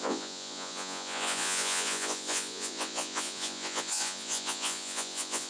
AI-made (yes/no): yes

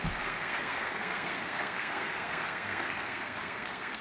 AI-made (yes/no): yes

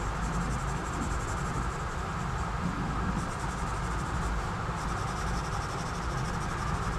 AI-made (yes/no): no